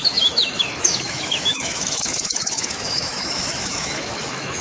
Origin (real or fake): fake